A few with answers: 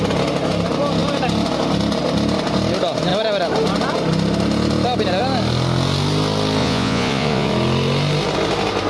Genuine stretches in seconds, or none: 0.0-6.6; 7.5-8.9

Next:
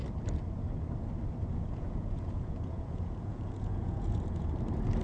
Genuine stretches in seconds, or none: 0.0-1.5; 4.5-5.0

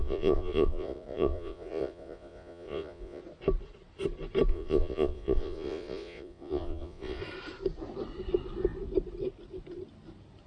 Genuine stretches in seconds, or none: 3.2-4.5; 7.2-10.5